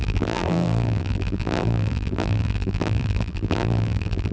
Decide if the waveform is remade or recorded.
remade